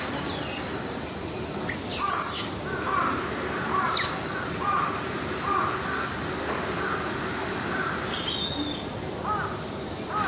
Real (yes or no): yes